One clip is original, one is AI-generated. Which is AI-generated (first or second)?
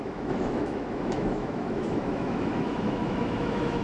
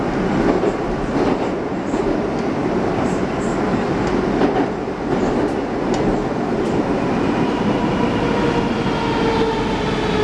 first